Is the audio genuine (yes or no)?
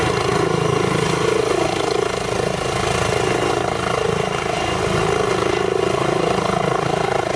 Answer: yes